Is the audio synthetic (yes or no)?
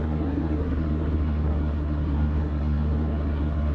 yes